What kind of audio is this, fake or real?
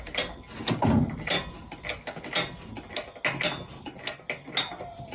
real